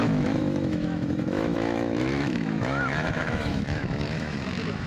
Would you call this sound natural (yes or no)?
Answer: no